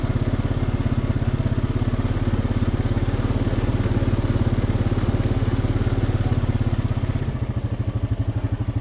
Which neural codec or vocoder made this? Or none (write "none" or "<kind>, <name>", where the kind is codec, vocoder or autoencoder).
none